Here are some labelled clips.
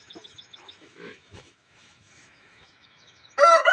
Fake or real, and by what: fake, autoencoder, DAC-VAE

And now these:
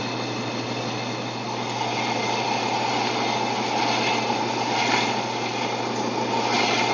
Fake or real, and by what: real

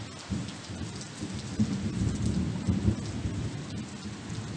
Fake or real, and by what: real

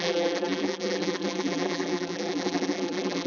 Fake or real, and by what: fake, vocoder, BigVGAN v2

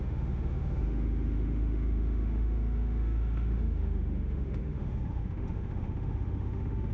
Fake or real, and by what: fake, autoencoder, DAC-VAE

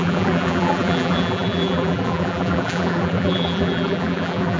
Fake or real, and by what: fake, vocoder, BigVGAN v2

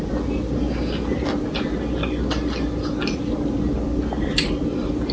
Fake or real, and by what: real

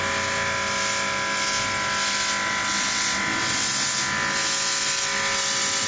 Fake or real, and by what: real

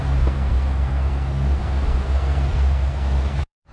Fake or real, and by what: fake, codec, SNAC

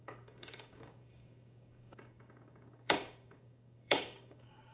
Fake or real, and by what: fake, codec, DAC